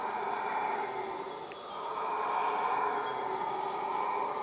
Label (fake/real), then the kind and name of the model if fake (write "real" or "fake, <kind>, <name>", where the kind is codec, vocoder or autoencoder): real